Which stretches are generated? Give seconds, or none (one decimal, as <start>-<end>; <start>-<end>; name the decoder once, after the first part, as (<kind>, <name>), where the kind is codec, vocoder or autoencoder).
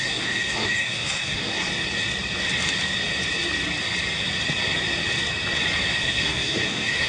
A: 0.0-1.7 (codec, SNAC); 6.0-7.1